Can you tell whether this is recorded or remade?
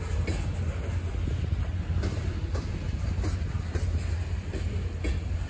recorded